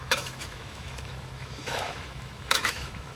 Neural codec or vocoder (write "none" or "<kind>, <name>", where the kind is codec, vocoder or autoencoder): autoencoder, DAC-VAE